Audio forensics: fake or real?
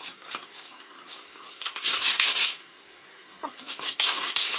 fake